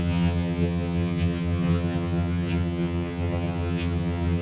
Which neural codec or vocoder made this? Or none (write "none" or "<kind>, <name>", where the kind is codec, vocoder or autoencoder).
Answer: vocoder, HiFi-GAN